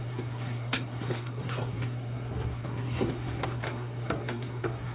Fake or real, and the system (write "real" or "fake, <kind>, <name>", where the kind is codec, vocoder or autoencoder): fake, codec, SNAC